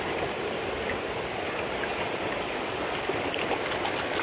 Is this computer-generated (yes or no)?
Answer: no